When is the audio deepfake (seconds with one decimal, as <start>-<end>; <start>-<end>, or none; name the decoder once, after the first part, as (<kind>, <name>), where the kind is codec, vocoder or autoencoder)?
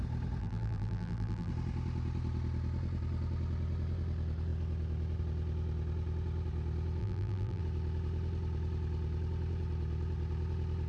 0.4-1.5 (vocoder, BigVGAN v2); 7.0-7.6